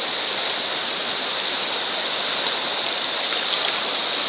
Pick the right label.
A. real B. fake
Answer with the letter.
A